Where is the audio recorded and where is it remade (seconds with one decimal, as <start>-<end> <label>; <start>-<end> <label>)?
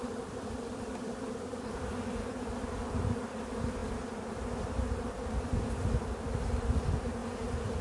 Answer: 0.0-7.2 remade; 7.2-7.8 recorded